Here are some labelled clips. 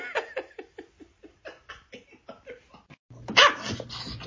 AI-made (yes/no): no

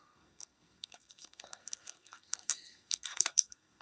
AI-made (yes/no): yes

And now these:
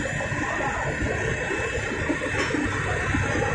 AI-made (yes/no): no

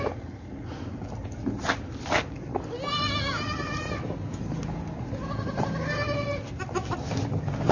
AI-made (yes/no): no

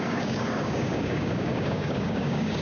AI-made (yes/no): yes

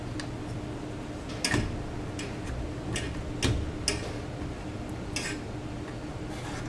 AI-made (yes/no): no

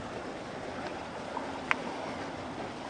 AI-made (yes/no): no